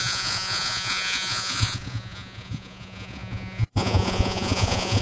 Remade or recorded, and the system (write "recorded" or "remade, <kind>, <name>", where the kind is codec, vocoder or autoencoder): remade, vocoder, Vocos